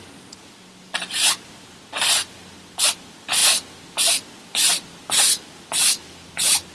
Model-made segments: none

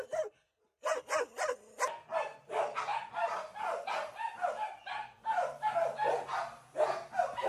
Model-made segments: 2.3-3.2 (vocoder, BigVGAN v2)